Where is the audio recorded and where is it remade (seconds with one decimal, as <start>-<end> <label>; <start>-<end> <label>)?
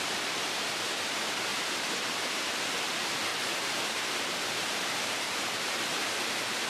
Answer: 0.0-1.5 recorded; 1.5-2.6 remade; 2.6-3.3 recorded; 3.3-5.9 remade; 5.9-6.7 recorded